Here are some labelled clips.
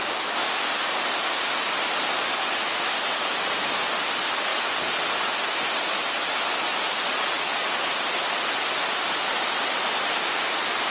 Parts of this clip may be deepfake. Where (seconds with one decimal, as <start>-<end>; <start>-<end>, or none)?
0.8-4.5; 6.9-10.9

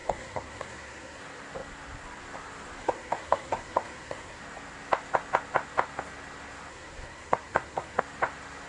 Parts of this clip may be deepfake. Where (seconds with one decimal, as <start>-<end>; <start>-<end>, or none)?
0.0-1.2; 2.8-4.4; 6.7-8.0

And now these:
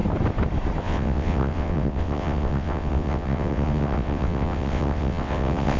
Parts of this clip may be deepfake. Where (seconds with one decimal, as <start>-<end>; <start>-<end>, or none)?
0.8-5.8